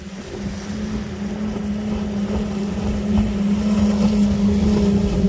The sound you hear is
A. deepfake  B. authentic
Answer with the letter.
B